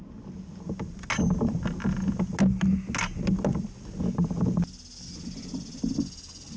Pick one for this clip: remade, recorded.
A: recorded